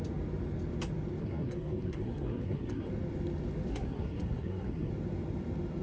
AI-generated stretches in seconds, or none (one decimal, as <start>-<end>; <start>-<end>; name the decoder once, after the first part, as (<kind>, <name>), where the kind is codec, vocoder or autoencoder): 1.2-2.9 (codec, SNAC); 3.7-4.9